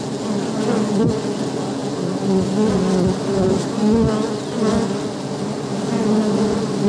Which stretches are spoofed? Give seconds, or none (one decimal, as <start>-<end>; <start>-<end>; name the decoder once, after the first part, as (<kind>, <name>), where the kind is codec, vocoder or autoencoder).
none